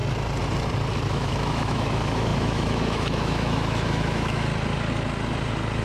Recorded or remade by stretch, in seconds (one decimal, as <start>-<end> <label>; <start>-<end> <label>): 0.0-1.1 recorded; 1.1-4.5 remade; 4.5-5.8 recorded